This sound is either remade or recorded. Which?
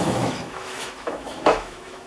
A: remade